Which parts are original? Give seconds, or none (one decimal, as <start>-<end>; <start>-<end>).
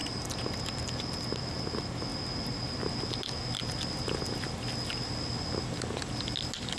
0.0-6.8